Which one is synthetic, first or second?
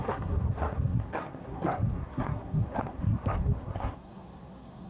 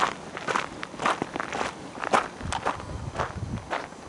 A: first